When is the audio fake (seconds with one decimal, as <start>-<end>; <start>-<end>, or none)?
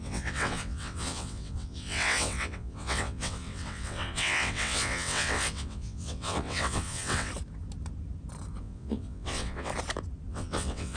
0.0-7.3; 8.6-9.7; 10.3-11.0